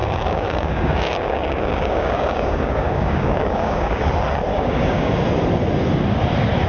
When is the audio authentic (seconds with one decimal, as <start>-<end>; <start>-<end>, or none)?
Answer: 4.0-4.5; 5.1-6.7